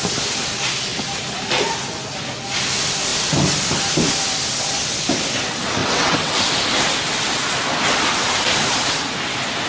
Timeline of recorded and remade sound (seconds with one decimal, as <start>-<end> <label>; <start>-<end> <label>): 0.0-5.8 recorded; 5.8-6.4 remade; 6.4-9.7 recorded